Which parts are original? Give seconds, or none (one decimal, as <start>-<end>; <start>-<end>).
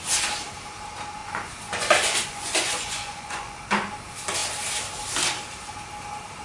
0.0-1.2; 3.6-6.4